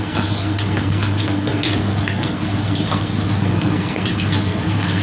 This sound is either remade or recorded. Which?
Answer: remade